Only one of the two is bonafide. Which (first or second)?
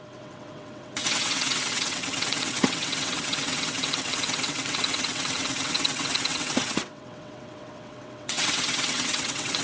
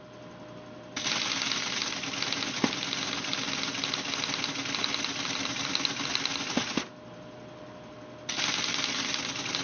second